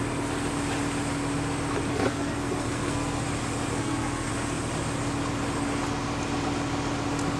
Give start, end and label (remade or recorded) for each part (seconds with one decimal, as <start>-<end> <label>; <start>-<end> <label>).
0.0-1.9 recorded; 1.9-3.2 remade; 3.2-3.7 recorded; 3.7-4.3 remade; 4.3-7.4 recorded